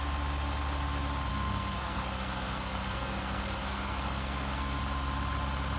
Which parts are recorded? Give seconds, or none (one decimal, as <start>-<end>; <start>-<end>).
0.0-1.3; 4.8-5.8